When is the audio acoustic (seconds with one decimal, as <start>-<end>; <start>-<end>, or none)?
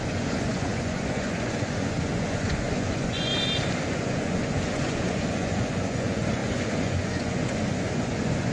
3.3-3.9